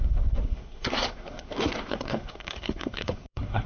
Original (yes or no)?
no